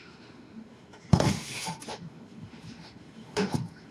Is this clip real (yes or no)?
no